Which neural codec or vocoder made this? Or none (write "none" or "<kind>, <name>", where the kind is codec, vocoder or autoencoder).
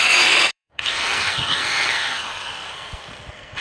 codec, SNAC